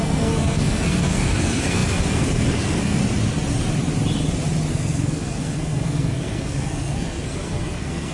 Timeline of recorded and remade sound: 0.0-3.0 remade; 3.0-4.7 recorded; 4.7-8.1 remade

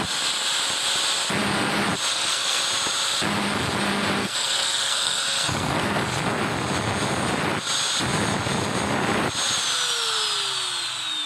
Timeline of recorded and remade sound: 0.0-2.1 recorded; 2.1-2.6 remade; 2.6-4.2 recorded; 4.2-6.2 remade; 6.2-11.3 recorded

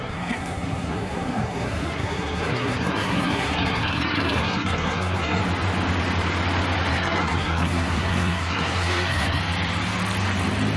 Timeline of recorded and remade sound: 0.0-5.4 remade; 5.4-6.9 recorded; 6.9-9.4 remade; 9.4-10.8 recorded

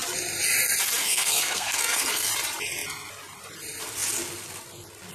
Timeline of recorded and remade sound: 0.0-1.0 recorded; 1.0-2.3 remade; 2.3-5.1 recorded

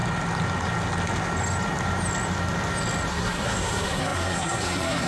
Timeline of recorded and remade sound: 0.0-3.1 recorded; 3.1-5.1 remade

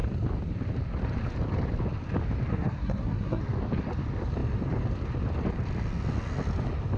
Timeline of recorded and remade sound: 0.0-2.5 recorded; 2.5-3.4 remade; 3.4-7.0 recorded

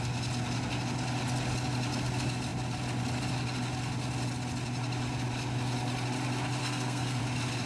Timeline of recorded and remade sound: 0.0-6.6 recorded; 6.6-7.2 remade; 7.2-7.7 recorded

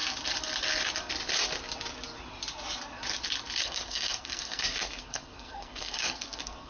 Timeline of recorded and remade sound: 0.0-3.6 recorded; 3.6-6.7 remade